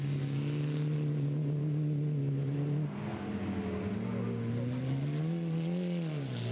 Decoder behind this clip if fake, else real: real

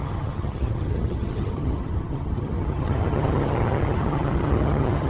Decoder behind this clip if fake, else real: fake, vocoder, HiFi-GAN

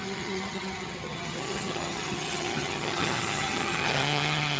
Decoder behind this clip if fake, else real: fake, vocoder, HiFi-GAN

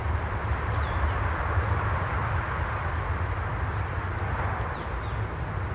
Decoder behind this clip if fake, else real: real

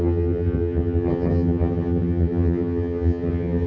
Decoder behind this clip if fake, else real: fake, vocoder, HiFi-GAN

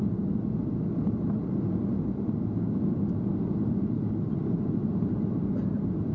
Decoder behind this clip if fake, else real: real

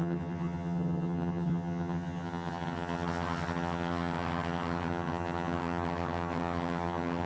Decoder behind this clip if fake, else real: fake, vocoder, HiFi-GAN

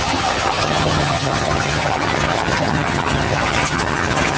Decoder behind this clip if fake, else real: fake, vocoder, HiFi-GAN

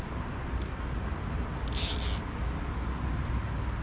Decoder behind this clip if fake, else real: real